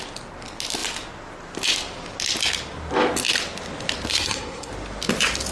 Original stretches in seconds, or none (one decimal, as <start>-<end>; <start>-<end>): 0.0-4.1; 4.7-5.5